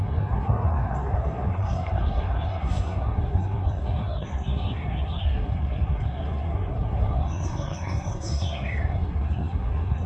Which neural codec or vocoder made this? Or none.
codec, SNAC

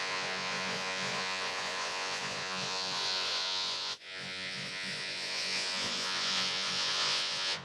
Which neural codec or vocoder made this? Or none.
vocoder, Vocos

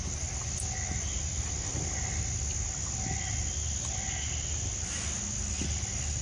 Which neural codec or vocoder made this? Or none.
none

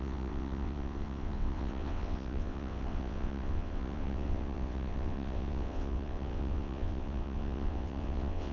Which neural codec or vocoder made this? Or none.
vocoder, WaveNeXt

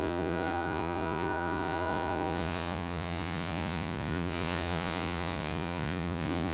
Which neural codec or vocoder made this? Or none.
vocoder, Vocos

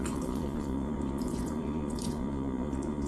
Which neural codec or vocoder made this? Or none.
vocoder, Vocos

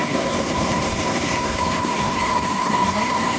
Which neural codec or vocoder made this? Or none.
codec, SNAC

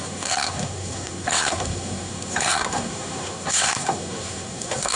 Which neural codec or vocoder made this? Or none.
codec, SNAC